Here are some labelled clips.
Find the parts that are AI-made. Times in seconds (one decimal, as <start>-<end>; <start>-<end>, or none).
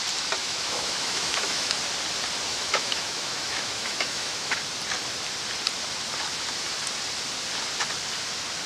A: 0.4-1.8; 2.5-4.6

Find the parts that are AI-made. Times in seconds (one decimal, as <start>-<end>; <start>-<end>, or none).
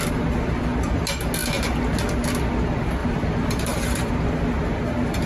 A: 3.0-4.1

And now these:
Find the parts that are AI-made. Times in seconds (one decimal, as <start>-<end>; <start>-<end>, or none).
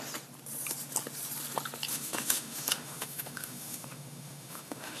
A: 1.9-5.0